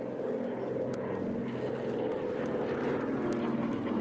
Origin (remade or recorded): recorded